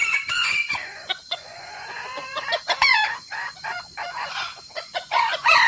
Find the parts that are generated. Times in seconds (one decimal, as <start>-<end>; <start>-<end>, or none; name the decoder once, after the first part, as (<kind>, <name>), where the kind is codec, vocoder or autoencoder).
0.0-5.7 (vocoder, Vocos)